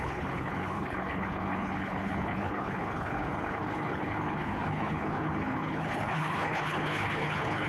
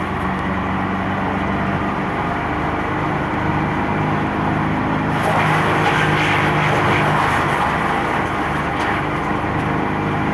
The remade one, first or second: first